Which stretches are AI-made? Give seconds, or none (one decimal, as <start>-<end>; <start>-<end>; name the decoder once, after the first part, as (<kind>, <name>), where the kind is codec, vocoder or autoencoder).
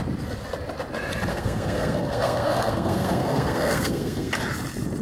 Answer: 1.3-4.3 (codec, SNAC)